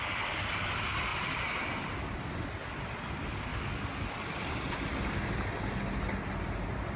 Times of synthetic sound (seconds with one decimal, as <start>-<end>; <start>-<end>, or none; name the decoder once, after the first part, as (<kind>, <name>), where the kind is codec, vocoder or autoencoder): 1.1-3.1 (vocoder, BigVGAN v2); 3.5-4.7